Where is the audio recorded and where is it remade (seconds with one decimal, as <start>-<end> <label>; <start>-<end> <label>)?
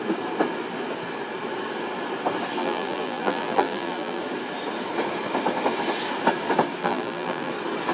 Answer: 0.0-2.6 recorded; 2.6-4.2 remade; 4.2-6.8 recorded; 6.8-7.5 remade; 7.5-7.9 recorded